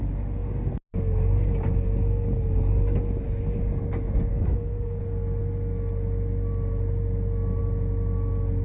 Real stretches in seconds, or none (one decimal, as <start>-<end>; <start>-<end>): 0.0-4.3; 5.0-8.6